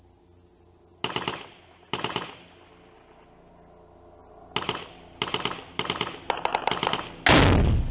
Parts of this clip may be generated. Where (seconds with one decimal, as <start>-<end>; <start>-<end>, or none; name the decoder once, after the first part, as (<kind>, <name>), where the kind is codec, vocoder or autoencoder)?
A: none